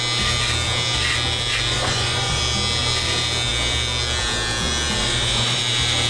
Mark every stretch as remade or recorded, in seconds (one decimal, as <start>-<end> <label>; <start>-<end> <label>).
0.0-1.7 recorded; 1.7-2.4 remade; 2.4-5.0 recorded; 5.0-5.6 remade; 5.6-6.1 recorded